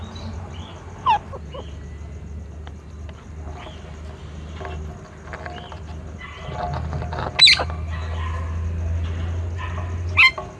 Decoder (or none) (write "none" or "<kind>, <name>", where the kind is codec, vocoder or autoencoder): none